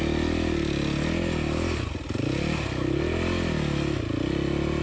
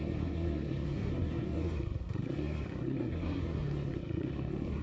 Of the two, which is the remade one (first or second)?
second